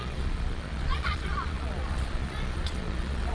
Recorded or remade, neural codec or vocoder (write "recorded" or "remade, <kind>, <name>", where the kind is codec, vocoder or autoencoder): remade, vocoder, Vocos